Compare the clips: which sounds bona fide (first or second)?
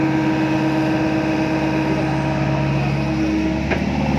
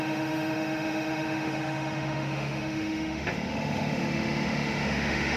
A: first